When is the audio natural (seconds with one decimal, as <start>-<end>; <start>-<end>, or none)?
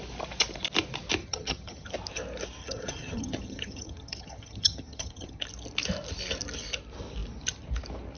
0.0-1.2; 1.9-2.6; 5.4-8.2